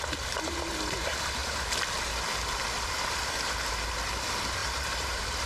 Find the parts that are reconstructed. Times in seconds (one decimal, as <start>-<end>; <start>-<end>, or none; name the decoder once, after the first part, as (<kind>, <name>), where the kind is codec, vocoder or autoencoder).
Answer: 4.6-5.5 (vocoder, BigVGAN v2)